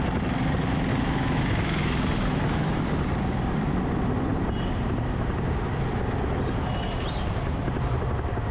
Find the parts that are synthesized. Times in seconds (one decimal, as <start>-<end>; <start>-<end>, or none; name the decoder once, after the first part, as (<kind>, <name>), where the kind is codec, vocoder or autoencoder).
0.9-2.8 (autoencoder, DAC-VAE)